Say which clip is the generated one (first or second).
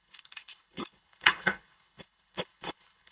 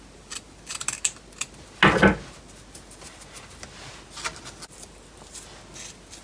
first